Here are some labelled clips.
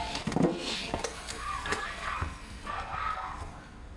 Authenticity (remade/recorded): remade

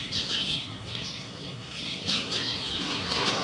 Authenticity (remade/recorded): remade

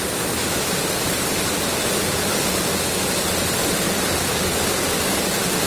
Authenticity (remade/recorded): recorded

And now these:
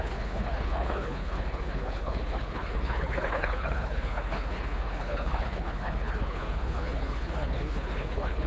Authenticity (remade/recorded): remade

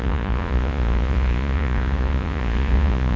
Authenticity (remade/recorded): remade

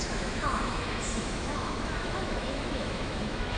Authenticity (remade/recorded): remade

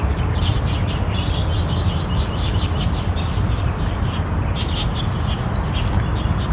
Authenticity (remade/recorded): recorded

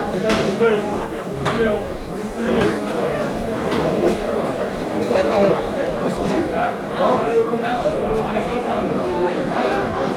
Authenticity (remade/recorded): remade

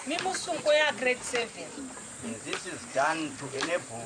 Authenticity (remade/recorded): remade